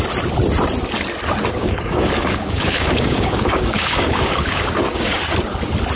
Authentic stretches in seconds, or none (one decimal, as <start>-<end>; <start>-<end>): 0.0-1.6; 5.2-6.0